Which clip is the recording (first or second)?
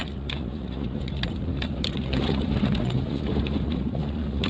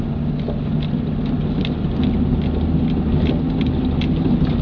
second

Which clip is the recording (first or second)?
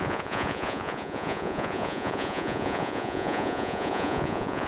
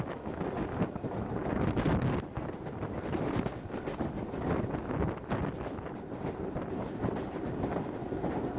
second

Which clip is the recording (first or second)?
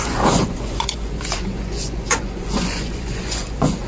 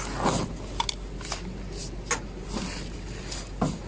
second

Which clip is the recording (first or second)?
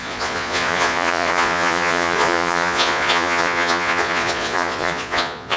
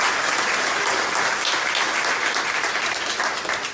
second